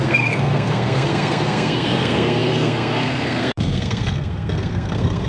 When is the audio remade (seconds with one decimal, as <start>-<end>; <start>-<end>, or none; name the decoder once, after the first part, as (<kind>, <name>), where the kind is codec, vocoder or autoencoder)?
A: 0.0-5.3 (codec, SNAC)